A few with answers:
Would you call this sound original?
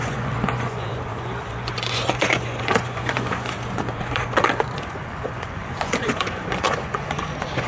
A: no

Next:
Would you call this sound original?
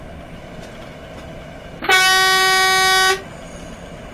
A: yes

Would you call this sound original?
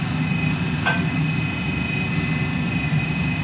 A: yes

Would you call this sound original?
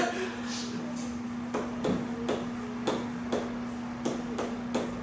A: yes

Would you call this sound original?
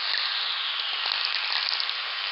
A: yes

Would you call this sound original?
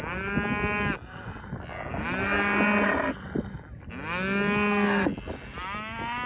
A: yes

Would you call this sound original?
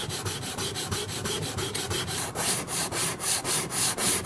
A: no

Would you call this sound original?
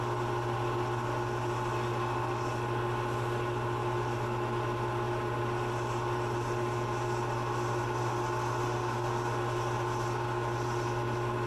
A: yes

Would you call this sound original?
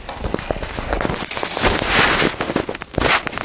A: yes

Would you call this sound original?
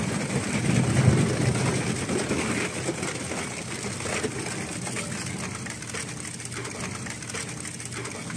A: yes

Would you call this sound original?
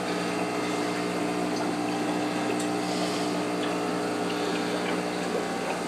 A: yes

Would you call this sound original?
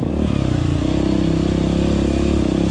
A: yes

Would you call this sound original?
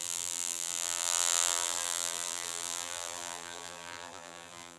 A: no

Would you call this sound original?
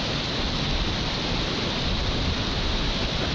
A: yes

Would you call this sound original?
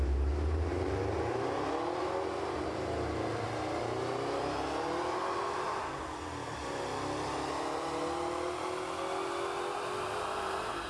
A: yes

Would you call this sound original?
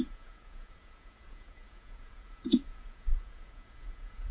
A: no